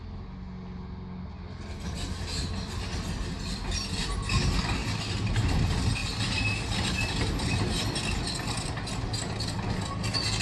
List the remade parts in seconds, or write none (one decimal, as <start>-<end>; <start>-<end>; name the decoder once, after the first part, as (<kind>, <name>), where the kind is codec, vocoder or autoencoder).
none